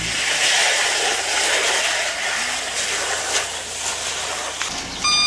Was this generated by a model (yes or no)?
no